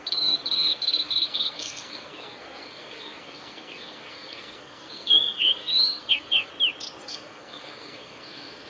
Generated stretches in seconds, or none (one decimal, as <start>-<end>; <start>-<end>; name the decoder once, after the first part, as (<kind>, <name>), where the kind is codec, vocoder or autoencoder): 0.0-6.5 (codec, SNAC); 7.0-8.7